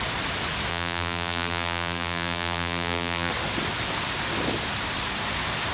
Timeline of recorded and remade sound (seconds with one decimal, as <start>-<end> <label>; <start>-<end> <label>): 0.0-0.7 recorded; 0.7-3.3 remade; 3.3-5.7 recorded